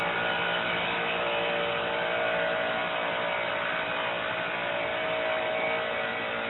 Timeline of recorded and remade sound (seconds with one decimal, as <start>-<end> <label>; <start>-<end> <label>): 0.0-6.5 recorded